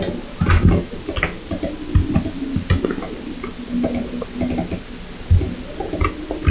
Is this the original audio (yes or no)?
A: yes